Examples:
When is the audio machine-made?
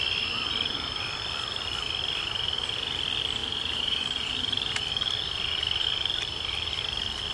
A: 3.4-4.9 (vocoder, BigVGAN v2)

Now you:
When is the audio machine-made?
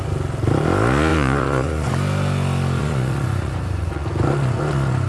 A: 1.1-1.9 (vocoder, Vocos); 2.8-5.1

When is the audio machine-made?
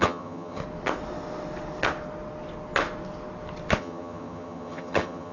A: 0.0-0.6 (vocoder, HiFi-GAN); 3.8-5.3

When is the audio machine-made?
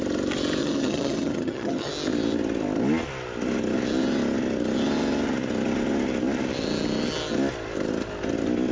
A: 0.6-1.9 (vocoder, HiFi-GAN)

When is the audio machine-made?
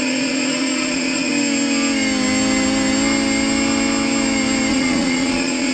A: 0.0-1.3 (vocoder, Vocos); 4.7-5.7